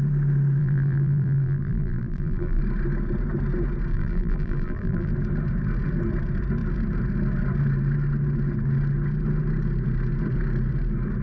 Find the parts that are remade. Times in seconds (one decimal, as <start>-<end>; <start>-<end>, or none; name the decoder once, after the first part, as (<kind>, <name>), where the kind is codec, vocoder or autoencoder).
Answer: 0.6-2.6 (vocoder, BigVGAN v2); 3.9-5.1